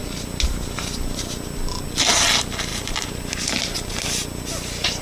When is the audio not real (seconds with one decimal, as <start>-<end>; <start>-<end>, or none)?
none